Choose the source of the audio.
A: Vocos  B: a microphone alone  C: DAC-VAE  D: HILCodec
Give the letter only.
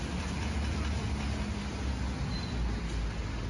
B